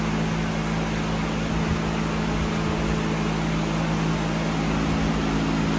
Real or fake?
real